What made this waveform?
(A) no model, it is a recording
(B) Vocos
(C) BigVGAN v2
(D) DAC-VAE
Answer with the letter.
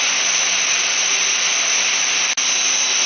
A